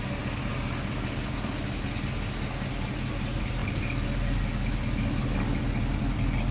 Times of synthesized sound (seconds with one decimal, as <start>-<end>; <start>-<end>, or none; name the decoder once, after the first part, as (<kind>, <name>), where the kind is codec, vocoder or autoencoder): none